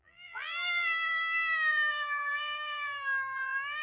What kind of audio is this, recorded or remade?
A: remade